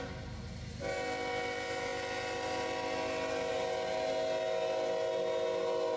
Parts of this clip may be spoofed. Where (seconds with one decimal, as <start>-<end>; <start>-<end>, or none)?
none